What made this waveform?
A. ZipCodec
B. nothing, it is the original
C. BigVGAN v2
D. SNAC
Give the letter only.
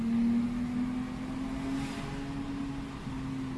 B